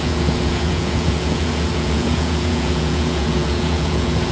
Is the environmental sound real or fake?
fake